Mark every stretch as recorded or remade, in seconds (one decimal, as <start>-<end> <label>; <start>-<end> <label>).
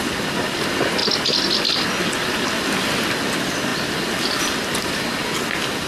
0.0-5.9 recorded